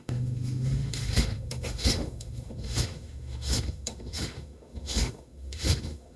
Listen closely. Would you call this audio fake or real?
fake